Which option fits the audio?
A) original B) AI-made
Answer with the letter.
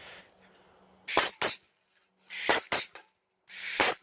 A